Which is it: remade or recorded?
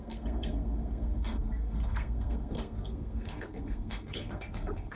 remade